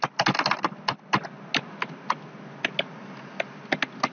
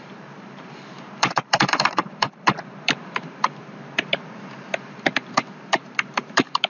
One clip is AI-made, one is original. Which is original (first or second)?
first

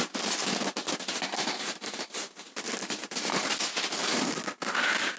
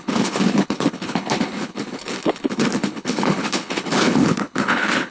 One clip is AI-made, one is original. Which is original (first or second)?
first